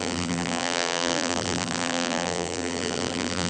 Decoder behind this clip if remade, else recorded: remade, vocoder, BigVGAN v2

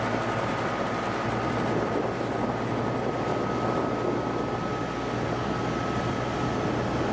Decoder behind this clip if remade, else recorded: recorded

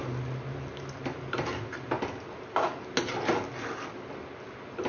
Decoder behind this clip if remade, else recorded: recorded